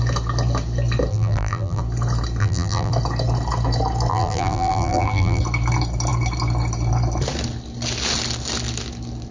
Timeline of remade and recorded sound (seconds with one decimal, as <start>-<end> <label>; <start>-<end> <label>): 0.0-1.1 recorded; 1.1-1.8 remade; 1.8-2.4 recorded; 2.4-2.9 remade; 2.9-4.1 recorded; 4.1-5.4 remade; 5.4-9.3 recorded